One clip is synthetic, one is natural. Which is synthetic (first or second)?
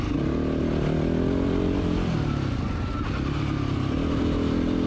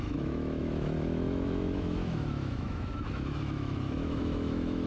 second